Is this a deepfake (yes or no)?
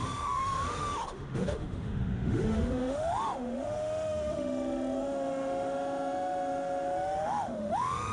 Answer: yes